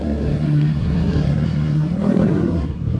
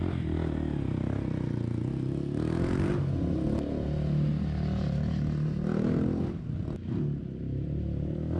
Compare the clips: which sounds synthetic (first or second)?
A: first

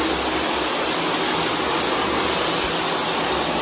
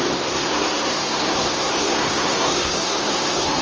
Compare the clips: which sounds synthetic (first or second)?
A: second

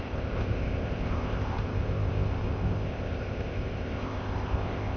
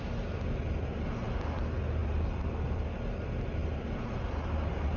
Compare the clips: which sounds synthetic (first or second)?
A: first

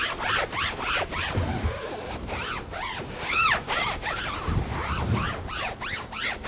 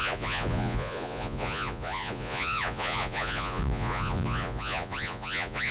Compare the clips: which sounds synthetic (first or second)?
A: second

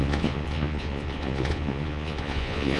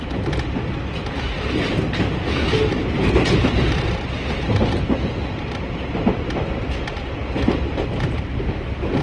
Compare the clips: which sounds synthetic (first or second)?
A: first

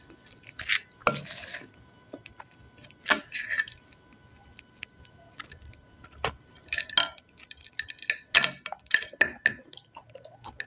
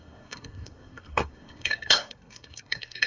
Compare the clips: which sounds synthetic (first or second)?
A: second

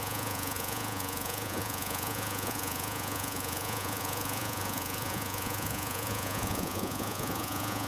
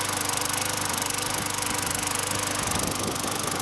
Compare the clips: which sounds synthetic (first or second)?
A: first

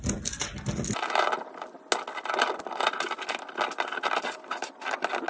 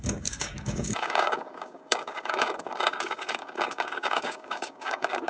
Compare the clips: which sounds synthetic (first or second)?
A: second